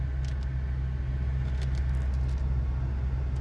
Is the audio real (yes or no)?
yes